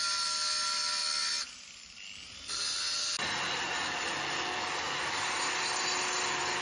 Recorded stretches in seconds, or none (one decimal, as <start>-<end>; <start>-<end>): 0.0-6.6